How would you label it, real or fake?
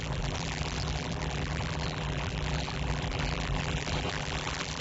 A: fake